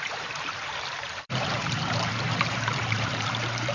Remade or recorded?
remade